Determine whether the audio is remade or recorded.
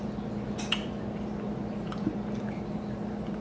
recorded